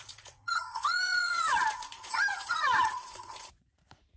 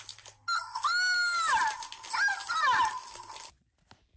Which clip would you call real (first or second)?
second